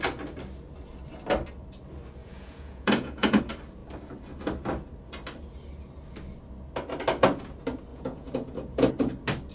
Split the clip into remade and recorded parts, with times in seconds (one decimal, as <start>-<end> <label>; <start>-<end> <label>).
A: 0.0-2.2 recorded; 2.2-3.4 remade; 3.4-7.9 recorded; 7.9-8.9 remade; 8.9-9.5 recorded